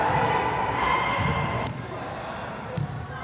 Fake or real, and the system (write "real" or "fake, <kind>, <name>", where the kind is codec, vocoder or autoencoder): real